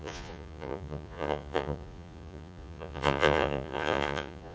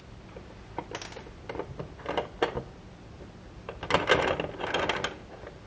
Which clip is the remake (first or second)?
first